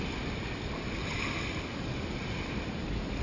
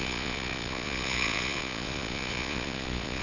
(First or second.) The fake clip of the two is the second